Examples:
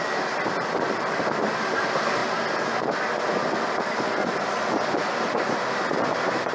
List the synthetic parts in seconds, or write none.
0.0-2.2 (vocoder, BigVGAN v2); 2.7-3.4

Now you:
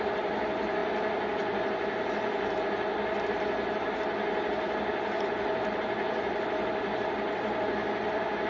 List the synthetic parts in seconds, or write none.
4.9-7.6 (vocoder, BigVGAN v2)

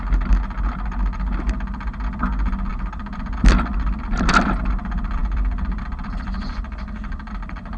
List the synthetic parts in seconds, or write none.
2.7-4.6 (vocoder, BigVGAN v2); 5.2-7.8

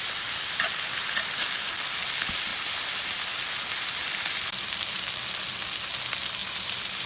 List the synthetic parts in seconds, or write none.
6.4-7.1 (vocoder, BigVGAN v2)

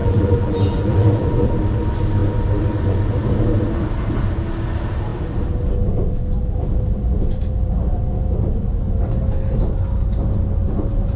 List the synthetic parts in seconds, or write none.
0.0-1.5 (vocoder, BigVGAN v2)

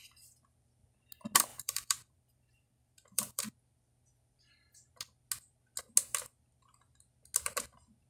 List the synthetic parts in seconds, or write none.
1.5-3.5 (vocoder, BigVGAN v2)